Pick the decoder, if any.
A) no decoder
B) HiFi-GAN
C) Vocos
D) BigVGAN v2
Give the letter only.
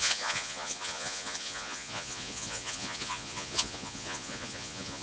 C